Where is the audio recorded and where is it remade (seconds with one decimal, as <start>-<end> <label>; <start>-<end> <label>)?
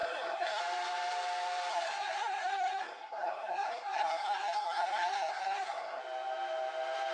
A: 0.0-0.6 remade; 0.6-1.7 recorded; 1.7-6.0 remade; 6.0-7.1 recorded